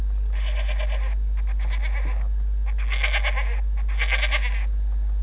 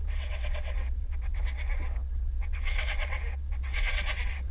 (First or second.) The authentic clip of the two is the first